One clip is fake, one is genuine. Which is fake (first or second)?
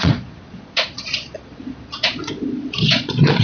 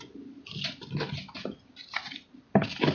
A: first